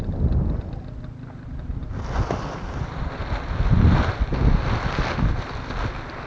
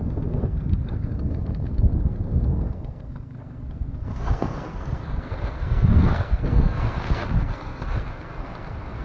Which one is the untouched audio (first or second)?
first